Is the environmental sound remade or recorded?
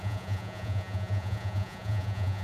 remade